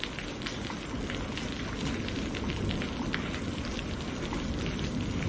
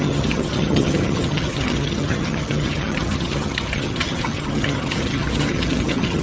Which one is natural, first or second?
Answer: first